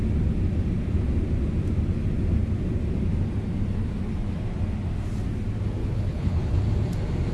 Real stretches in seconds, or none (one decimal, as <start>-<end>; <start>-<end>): 0.0-5.8; 6.6-7.3